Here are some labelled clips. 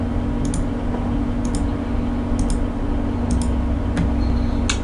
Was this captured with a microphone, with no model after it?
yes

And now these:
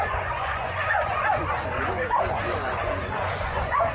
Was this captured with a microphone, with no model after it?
no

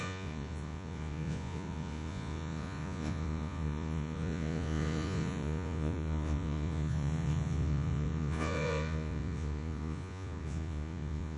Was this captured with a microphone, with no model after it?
no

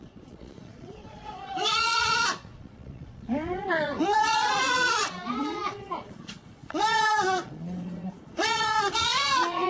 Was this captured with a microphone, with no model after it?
no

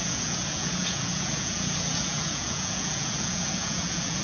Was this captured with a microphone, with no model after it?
no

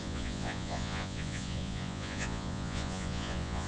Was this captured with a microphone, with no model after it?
no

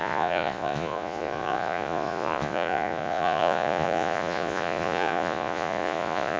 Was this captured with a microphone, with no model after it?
no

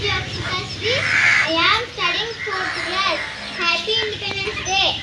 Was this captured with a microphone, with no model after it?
yes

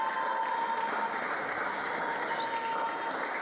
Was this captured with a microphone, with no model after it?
yes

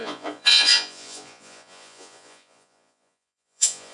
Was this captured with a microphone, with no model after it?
no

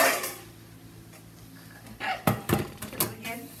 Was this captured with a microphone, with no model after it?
yes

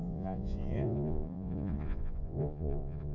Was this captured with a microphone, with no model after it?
no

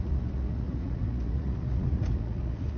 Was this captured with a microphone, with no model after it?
no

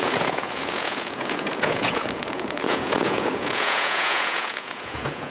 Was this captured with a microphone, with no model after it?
no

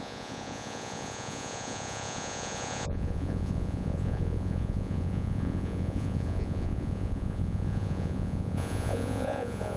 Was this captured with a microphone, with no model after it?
no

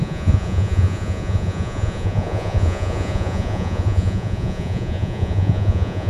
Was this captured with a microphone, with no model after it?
no